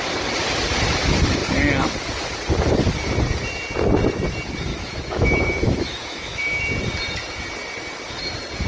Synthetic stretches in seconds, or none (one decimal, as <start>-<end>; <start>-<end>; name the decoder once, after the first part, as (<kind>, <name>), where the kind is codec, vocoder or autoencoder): 4.7-6.6 (autoencoder, DAC-VAE)